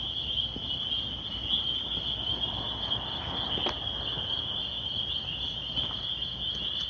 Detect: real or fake real